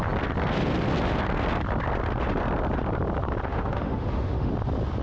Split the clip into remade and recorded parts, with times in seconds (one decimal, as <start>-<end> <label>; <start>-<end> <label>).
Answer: 0.0-3.5 recorded; 3.5-4.5 remade; 4.5-5.0 recorded